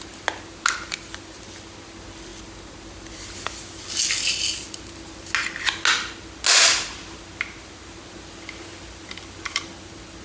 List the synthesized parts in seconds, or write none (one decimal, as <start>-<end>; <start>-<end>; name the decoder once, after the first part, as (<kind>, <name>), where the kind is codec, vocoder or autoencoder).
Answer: none